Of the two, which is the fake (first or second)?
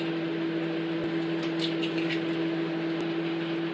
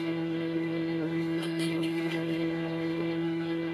second